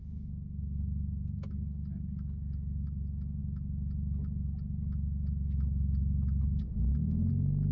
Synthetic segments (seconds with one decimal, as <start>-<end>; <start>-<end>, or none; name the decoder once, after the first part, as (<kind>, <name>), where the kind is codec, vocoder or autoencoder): 0.0-3.4 (codec, DAC); 6.4-7.7